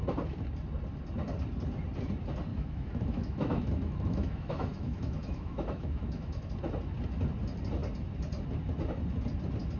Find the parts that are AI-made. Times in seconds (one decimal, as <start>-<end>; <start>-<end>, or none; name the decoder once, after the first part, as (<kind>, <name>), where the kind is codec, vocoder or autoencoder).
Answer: 2.5-6.5 (autoencoder, DAC-VAE)